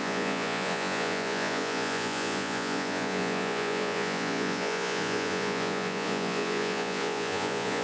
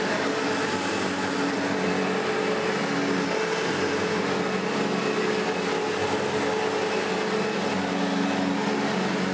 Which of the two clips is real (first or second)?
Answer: second